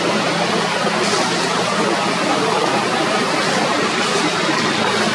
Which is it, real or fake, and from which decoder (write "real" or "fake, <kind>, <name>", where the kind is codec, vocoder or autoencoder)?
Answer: real